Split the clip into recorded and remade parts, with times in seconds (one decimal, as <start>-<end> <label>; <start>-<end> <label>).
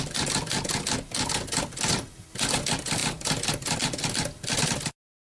0.0-5.4 recorded